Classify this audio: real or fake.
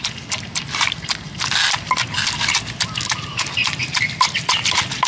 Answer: real